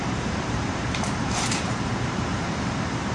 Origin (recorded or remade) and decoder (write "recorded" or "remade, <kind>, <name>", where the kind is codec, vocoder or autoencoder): remade, vocoder, BigVGAN v2